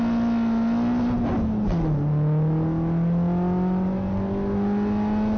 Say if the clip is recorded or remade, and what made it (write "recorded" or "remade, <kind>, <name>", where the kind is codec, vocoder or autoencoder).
recorded